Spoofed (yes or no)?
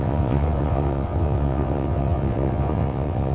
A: yes